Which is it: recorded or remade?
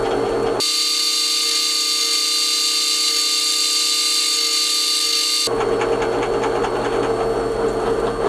recorded